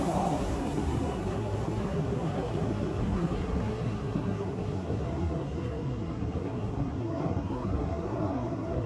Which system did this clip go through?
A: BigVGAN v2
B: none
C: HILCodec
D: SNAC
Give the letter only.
D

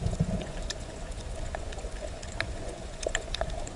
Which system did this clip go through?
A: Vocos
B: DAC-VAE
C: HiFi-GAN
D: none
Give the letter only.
A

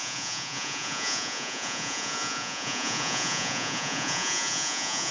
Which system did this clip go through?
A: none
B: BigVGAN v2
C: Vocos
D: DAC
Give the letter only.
C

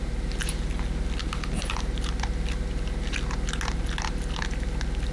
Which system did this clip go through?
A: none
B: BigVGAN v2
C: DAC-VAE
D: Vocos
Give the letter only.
A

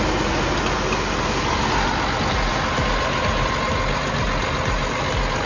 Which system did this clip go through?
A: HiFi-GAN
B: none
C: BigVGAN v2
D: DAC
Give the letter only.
B